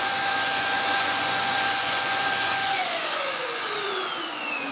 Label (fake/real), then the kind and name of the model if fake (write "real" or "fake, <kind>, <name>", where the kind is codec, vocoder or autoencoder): fake, vocoder, Vocos